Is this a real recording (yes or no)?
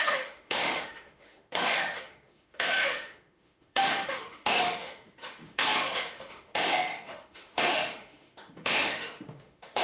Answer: no